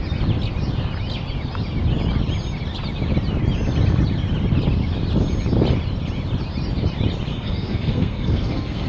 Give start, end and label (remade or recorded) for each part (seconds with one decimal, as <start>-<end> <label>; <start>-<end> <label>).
0.0-7.3 recorded; 7.3-8.9 remade